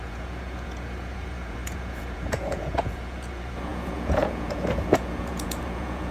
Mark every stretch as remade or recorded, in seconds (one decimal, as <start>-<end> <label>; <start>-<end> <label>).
0.0-6.1 remade